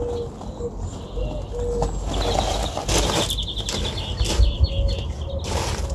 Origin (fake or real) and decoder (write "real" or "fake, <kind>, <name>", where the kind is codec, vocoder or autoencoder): real